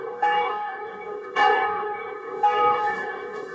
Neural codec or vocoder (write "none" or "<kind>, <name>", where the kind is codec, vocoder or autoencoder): codec, DAC